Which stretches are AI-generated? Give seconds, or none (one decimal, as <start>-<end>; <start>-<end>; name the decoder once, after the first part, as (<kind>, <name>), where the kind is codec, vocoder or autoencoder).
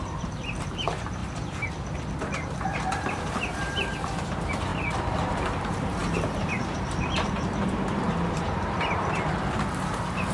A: 0.0-4.7 (vocoder, BigVGAN v2); 5.3-10.3